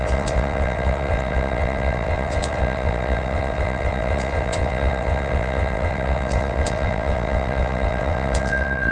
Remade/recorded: remade